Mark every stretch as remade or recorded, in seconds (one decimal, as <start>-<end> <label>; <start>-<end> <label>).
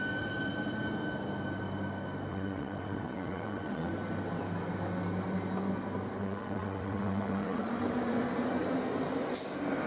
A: 0.0-2.3 recorded; 2.3-3.9 remade; 3.9-6.2 recorded; 6.2-7.7 remade; 7.7-9.9 recorded